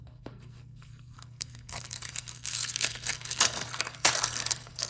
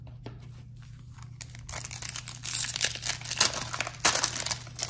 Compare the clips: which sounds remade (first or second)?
first